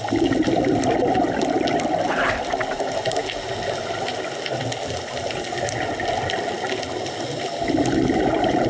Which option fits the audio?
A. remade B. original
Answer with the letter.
B